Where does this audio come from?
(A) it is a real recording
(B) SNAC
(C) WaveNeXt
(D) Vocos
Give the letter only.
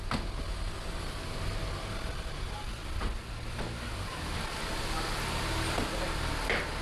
A